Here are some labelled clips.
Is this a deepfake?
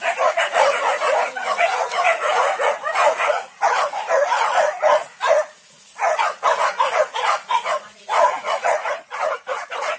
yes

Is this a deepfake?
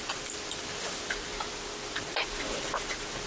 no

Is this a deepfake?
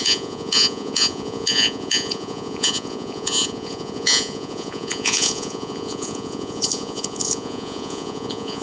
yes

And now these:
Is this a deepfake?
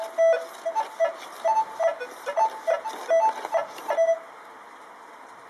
no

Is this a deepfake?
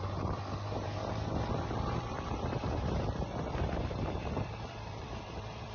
yes